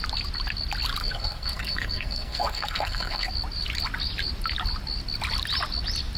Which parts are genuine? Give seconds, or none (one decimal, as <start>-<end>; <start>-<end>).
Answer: 0.0-1.0; 3.3-6.2